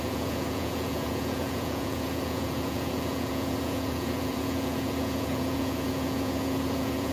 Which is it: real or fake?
fake